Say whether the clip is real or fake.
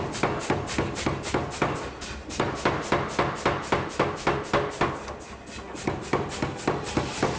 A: real